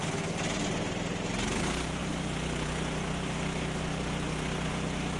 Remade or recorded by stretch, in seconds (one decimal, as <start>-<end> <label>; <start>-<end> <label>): 0.0-5.2 recorded